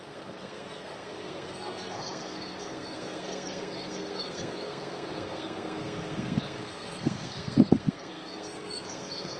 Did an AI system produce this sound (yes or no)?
yes